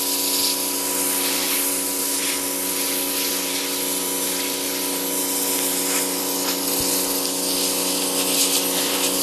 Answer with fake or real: real